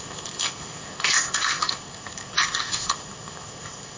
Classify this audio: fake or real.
fake